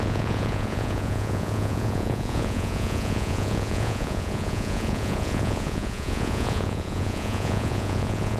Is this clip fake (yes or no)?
yes